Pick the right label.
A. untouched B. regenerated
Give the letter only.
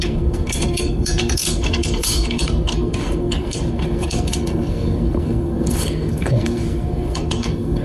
B